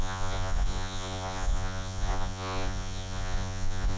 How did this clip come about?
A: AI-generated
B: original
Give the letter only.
A